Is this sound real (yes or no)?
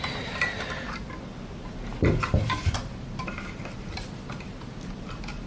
yes